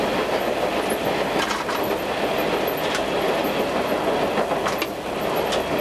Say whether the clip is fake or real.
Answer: real